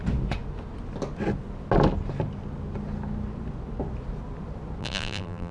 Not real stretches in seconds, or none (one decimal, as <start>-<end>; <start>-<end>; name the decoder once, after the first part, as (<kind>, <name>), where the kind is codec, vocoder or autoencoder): 4.8-5.5 (vocoder, BigVGAN v2)